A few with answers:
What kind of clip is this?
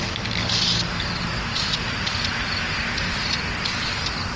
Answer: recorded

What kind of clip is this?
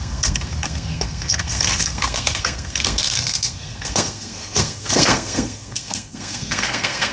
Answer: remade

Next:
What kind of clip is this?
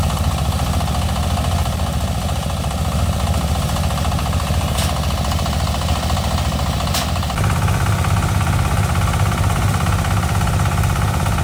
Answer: recorded